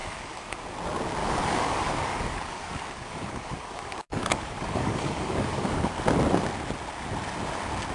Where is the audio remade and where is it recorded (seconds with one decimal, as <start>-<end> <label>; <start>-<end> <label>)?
0.0-0.6 remade; 0.6-1.2 recorded; 1.2-5.9 remade; 5.9-7.9 recorded